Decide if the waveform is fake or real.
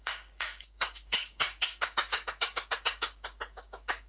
fake